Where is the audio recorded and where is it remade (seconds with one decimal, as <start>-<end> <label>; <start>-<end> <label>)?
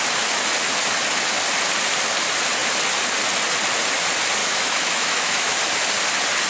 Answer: 0.0-4.4 recorded; 4.4-5.6 remade; 5.6-6.5 recorded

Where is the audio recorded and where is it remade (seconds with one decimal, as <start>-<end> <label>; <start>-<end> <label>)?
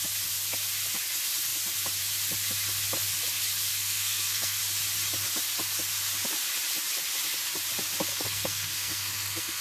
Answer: 0.0-3.7 recorded; 3.7-4.6 remade; 4.6-8.1 recorded; 8.1-9.6 remade